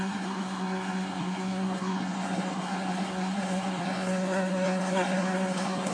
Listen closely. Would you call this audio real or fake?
fake